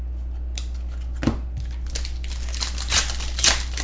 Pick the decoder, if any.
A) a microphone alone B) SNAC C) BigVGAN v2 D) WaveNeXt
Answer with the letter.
A